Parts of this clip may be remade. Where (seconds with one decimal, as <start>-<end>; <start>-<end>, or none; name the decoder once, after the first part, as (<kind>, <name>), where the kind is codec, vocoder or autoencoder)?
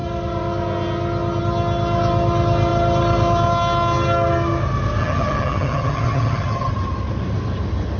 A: 5.0-6.7 (vocoder, HiFi-GAN)